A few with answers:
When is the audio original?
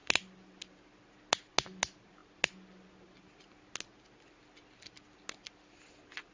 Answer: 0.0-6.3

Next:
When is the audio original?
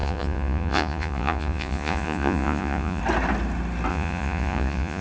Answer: 3.0-3.9